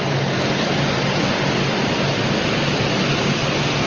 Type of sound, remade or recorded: recorded